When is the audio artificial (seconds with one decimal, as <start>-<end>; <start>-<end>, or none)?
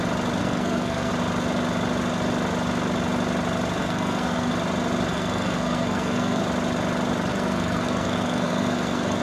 0.4-1.1; 3.8-4.5; 5.1-6.4; 7.3-9.2